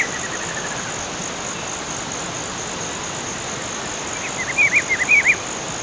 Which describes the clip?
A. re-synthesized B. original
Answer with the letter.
B